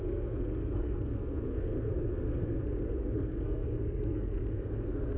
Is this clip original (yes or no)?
no